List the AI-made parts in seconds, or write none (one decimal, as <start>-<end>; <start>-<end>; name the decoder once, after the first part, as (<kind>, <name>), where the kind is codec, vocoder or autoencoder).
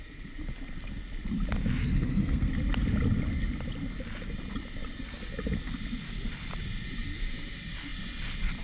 1.8-2.5 (codec, SNAC)